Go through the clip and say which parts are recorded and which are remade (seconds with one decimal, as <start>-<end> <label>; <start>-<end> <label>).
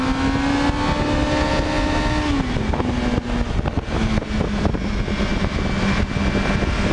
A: 0.0-6.9 recorded